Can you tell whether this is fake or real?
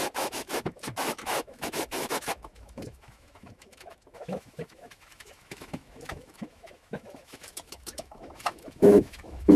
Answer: fake